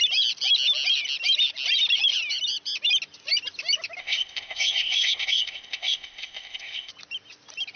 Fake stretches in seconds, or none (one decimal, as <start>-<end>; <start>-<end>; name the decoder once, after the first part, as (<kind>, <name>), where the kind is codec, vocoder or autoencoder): 4.0-6.9 (codec, ZipCodec)